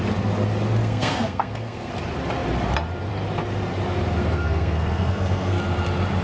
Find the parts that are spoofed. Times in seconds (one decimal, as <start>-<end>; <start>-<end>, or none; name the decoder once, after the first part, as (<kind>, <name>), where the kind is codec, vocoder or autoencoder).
0.8-1.9 (codec, SNAC); 4.2-5.6